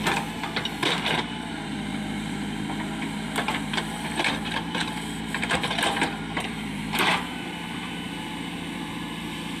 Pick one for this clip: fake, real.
fake